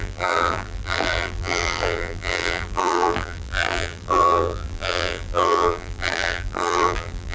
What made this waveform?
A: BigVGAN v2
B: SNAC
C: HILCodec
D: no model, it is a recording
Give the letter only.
A